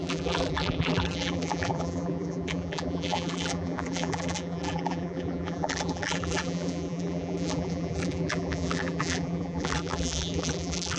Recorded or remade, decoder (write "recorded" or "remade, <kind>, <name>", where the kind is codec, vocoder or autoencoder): remade, vocoder, BigVGAN v2